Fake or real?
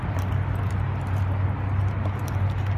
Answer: real